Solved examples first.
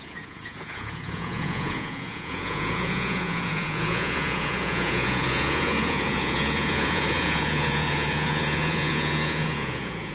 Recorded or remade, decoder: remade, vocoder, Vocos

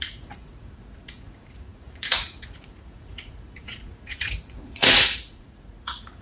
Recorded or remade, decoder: remade, vocoder, Vocos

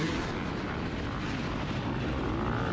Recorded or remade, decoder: recorded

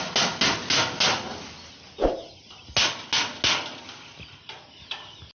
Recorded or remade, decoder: recorded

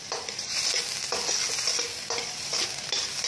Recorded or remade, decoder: recorded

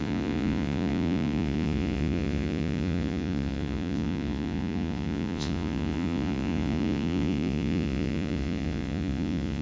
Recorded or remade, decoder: remade, vocoder, Vocos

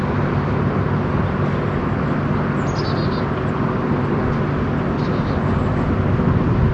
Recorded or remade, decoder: recorded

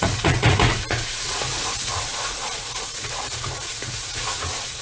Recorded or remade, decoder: remade, vocoder, Vocos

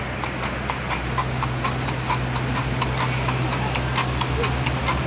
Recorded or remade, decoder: recorded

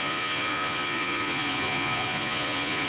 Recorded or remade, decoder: remade, vocoder, Vocos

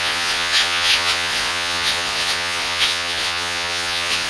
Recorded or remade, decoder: remade, vocoder, Vocos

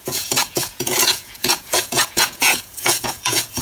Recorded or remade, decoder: remade, vocoder, Vocos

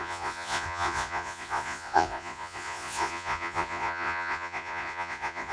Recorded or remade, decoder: remade, vocoder, Vocos